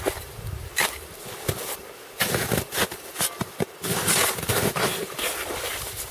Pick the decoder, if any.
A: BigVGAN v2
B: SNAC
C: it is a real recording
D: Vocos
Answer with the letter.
C